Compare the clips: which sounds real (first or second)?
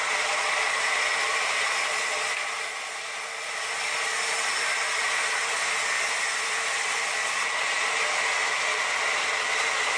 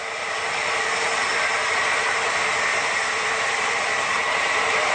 first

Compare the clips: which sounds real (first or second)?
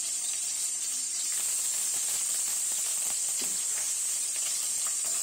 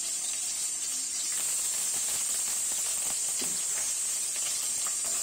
second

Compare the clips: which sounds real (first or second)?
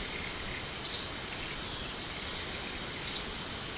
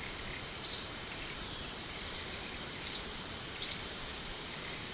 first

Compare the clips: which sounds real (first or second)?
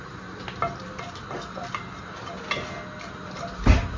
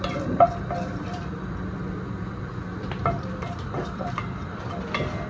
first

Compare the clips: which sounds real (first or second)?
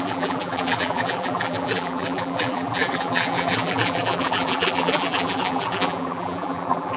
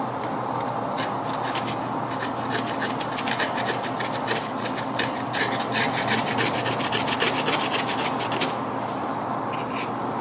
second